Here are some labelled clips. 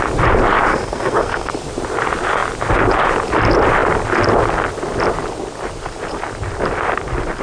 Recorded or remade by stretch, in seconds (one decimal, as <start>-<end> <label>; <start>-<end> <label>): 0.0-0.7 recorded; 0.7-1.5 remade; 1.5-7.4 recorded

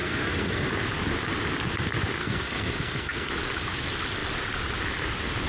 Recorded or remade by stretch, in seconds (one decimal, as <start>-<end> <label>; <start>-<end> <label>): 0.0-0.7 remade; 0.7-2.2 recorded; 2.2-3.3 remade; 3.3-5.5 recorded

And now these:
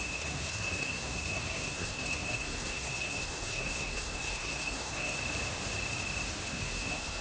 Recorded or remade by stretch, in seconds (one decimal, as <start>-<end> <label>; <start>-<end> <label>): 0.0-5.2 remade; 5.2-6.5 recorded; 6.5-7.2 remade

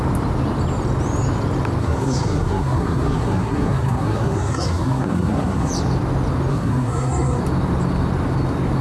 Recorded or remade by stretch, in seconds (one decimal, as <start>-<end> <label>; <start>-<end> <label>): 0.0-1.8 recorded; 1.8-5.7 remade; 5.7-6.5 recorded; 6.5-7.4 remade; 7.4-8.8 recorded

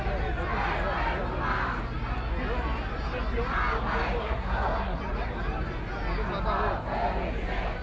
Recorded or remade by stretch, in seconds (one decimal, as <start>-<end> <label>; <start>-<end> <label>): 0.0-4.2 recorded; 4.2-5.0 remade; 5.0-7.8 recorded

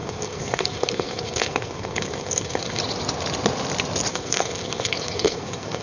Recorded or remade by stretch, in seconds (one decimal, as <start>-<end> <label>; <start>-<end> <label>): 0.0-2.8 remade; 2.8-4.1 recorded; 4.1-5.8 remade

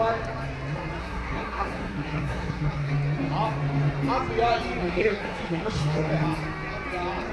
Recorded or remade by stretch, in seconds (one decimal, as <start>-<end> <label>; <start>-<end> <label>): 0.0-1.0 recorded; 1.0-2.9 remade; 2.9-4.8 recorded; 4.8-6.1 remade; 6.1-7.3 recorded